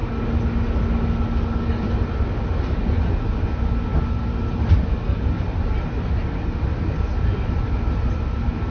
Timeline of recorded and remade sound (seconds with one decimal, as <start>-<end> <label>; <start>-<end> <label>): 0.0-8.7 recorded